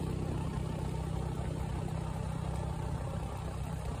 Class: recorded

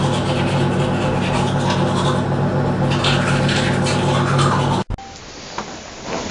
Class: recorded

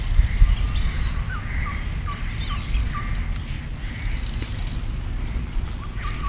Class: recorded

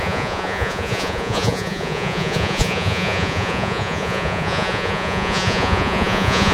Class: remade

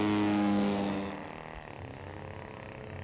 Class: recorded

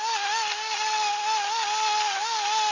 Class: recorded